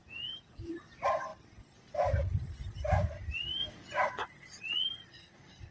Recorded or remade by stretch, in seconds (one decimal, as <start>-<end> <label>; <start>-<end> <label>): 0.0-0.6 remade; 0.6-5.7 recorded